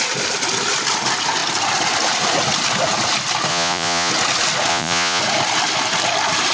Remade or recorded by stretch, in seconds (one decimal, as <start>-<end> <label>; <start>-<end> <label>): 0.0-3.5 recorded; 3.5-4.1 remade; 4.1-4.7 recorded; 4.7-5.2 remade; 5.2-6.5 recorded